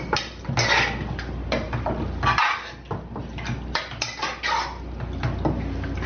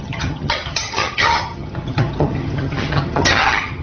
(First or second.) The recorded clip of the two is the first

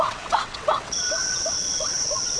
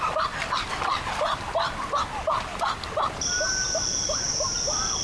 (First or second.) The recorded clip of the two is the second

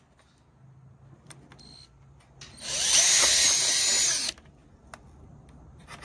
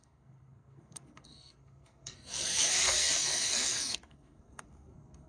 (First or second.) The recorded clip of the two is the first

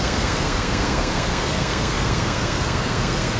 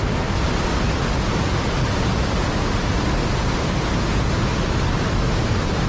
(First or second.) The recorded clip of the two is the second